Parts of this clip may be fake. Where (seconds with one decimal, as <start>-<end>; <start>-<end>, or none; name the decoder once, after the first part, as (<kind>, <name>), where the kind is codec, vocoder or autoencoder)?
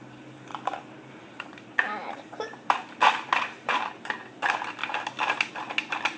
0.5-4.0 (vocoder, BigVGAN v2)